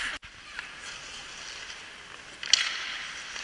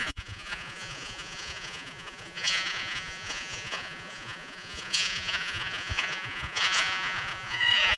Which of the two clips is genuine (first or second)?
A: first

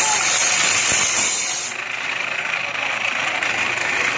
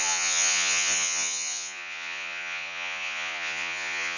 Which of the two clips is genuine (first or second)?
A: first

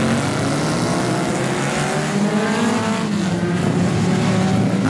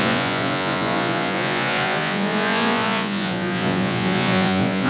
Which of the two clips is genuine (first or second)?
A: first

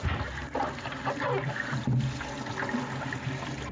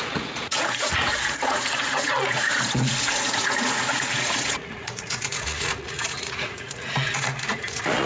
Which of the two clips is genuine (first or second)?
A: first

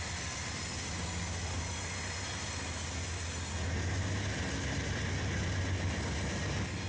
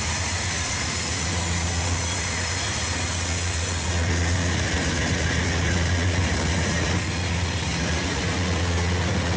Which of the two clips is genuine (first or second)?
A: first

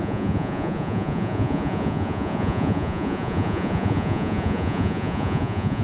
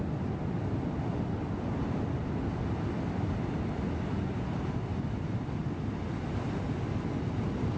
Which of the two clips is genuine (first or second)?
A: second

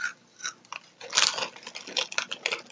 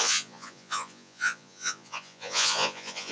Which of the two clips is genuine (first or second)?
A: first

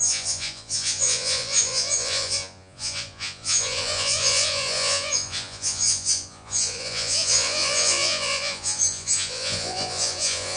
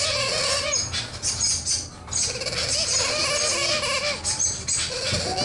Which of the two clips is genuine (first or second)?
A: second